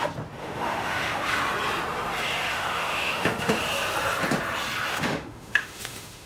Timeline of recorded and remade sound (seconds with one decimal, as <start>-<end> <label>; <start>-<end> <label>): 0.0-0.4 recorded; 0.4-1.4 remade; 1.4-2.5 recorded; 2.5-3.6 remade; 3.6-4.9 recorded; 4.9-6.3 remade